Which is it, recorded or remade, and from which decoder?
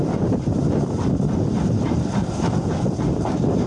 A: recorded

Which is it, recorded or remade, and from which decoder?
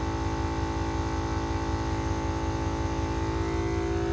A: recorded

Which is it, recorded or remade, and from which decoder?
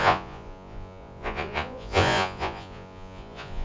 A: remade, vocoder, Vocos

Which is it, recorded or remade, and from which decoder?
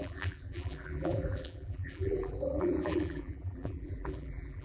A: remade, vocoder, BigVGAN v2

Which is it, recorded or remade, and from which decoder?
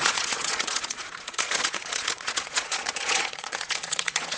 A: remade, vocoder, Vocos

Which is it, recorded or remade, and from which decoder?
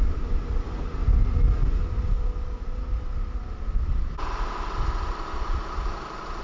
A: recorded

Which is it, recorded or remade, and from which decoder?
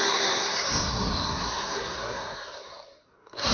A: remade, codec, SNAC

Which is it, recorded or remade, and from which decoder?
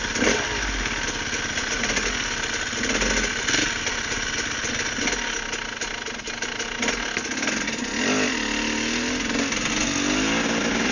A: recorded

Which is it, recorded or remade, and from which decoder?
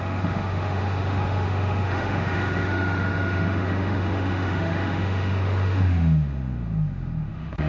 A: remade, autoencoder, DAC-VAE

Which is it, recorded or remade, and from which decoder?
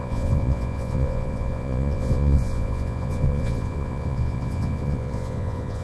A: remade, vocoder, Vocos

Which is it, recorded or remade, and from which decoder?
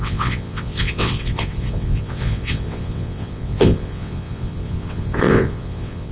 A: remade, vocoder, WaveNeXt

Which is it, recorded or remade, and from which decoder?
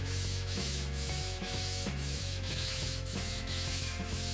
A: remade, autoencoder, DAC-VAE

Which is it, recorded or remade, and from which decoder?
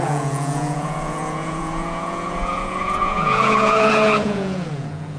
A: remade, vocoder, Vocos